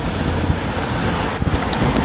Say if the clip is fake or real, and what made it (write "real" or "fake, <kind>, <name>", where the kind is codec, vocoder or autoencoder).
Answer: real